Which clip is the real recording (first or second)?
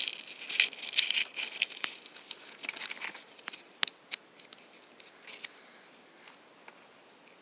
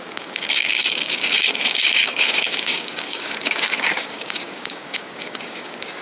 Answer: first